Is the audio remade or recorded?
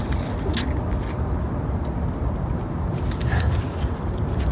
recorded